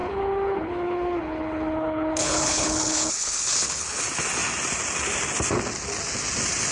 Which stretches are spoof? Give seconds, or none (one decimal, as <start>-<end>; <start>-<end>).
0.0-4.0